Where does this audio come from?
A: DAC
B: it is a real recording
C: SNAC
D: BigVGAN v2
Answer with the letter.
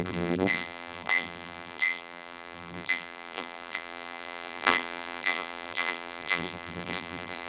D